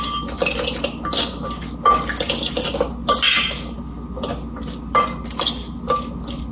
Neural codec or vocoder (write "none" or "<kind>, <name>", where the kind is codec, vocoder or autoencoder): none